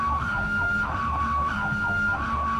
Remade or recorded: remade